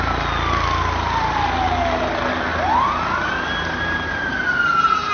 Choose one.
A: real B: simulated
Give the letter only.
A